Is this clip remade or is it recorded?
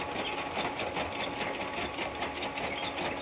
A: recorded